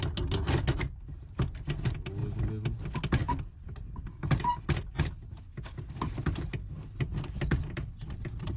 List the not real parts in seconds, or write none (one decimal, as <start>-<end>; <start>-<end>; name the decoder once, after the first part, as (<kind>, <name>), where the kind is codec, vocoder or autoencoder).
none